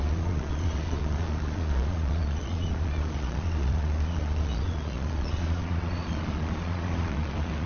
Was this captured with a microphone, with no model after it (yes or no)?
no